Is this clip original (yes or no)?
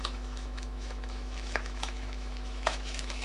no